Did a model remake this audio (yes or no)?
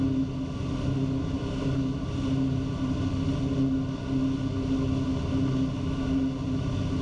no